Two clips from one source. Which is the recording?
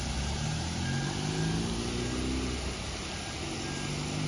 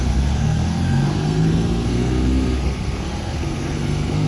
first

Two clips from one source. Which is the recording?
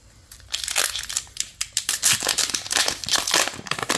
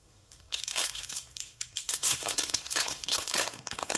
first